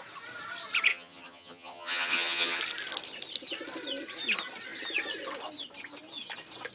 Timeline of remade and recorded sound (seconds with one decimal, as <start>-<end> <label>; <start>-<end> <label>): 0.0-0.9 recorded; 0.9-2.6 remade; 2.6-6.7 recorded